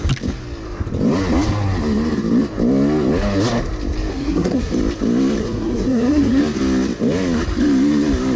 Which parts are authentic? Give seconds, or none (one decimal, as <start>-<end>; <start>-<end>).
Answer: 0.0-4.1; 4.7-5.4; 6.4-8.4

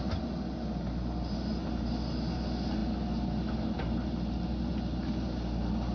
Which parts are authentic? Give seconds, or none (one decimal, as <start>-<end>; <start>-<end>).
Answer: 0.0-5.9

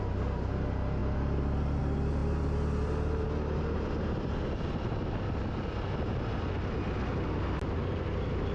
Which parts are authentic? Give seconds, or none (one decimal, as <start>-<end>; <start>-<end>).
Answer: 0.0-8.5

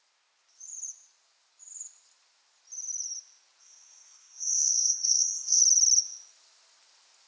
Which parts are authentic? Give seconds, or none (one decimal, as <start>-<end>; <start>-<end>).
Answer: 0.0-3.6; 5.6-7.3

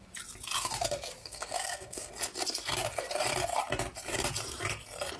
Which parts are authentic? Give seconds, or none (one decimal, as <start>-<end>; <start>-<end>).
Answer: 0.0-1.2; 2.1-5.2

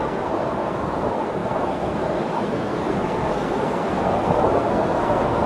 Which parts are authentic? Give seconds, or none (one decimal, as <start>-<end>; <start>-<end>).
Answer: none

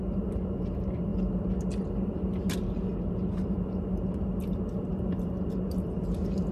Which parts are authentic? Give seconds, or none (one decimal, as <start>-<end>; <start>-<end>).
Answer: 0.0-6.5